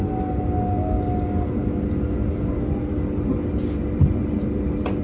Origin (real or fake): real